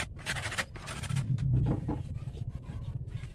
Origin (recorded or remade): remade